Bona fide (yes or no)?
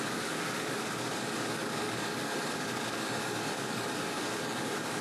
no